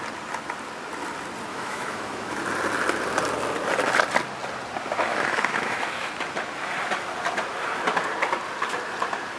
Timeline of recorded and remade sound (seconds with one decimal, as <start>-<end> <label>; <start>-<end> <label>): 0.0-1.5 recorded; 1.5-2.4 remade; 2.4-5.1 recorded; 5.1-6.1 remade; 6.1-9.4 recorded